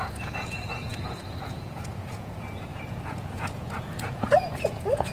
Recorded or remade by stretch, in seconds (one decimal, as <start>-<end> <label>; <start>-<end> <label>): 0.0-5.1 remade